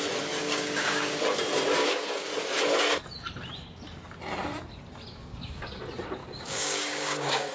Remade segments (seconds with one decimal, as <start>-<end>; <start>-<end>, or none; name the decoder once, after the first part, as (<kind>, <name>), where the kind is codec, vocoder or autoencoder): 0.4-1.2 (codec, DAC); 1.8-2.3; 5.3-5.8; 6.2-7.5